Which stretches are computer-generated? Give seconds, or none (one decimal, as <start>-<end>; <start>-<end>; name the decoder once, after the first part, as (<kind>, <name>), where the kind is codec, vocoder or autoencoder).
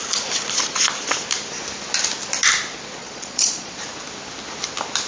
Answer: 3.0-3.8 (vocoder, Vocos)